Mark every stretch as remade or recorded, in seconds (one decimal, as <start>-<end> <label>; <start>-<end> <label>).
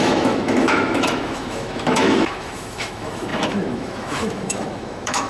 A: 0.0-5.3 remade